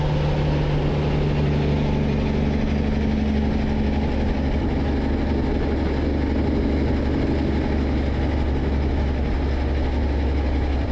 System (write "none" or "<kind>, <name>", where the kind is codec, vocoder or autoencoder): none